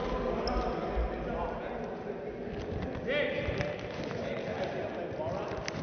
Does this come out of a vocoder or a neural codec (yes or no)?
no